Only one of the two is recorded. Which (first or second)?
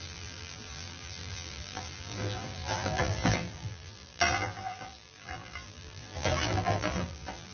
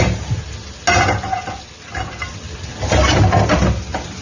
second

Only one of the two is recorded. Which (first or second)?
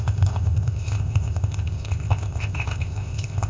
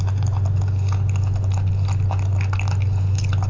second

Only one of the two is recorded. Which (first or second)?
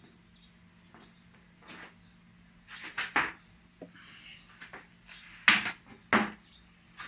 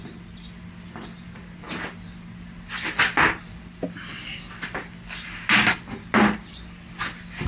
first